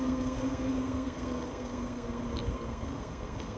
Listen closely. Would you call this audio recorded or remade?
remade